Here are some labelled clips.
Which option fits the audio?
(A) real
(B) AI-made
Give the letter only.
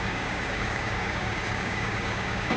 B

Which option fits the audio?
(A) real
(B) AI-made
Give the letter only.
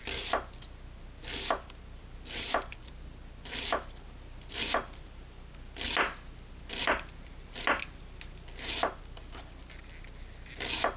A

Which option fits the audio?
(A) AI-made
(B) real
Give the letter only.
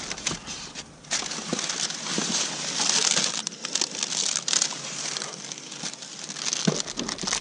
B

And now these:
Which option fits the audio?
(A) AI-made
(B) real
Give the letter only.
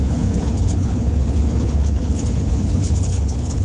A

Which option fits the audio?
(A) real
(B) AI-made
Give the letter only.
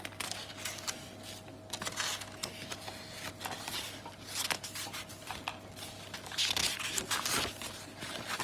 A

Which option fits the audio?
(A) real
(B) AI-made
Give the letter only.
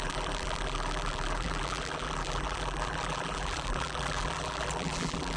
B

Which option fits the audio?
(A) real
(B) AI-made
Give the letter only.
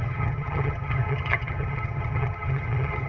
B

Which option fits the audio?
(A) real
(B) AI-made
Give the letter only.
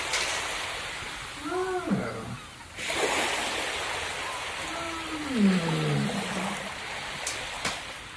A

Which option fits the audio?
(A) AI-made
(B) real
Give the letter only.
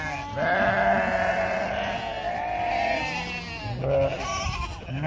B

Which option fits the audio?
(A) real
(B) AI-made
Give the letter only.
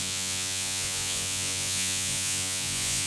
B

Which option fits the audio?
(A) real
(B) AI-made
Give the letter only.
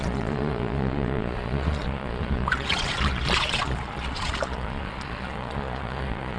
B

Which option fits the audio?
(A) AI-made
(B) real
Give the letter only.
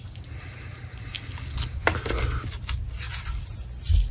B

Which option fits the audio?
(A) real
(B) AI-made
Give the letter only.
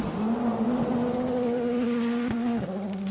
A